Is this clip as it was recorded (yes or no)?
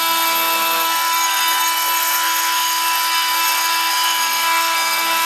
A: no